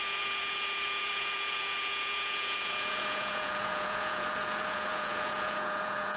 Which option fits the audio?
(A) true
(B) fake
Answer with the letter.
B